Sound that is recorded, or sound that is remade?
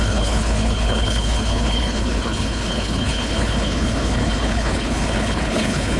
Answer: remade